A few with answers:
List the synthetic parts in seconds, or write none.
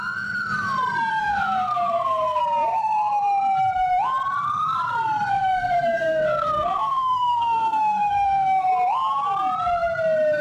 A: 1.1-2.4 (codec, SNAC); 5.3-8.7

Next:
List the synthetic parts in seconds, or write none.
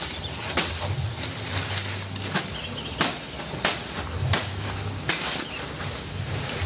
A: 4.4-5.0 (codec, DAC)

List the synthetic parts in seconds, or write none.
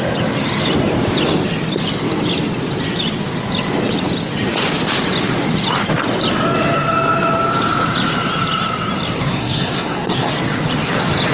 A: 9.2-10.3 (codec, SNAC)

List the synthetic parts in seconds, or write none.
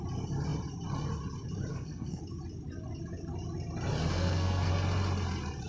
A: 1.7-2.2 (codec, SNAC); 4.1-4.7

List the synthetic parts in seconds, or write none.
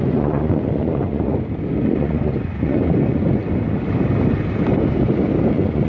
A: 0.0-1.3 (vocoder, Vocos); 1.8-3.4; 5.5-5.9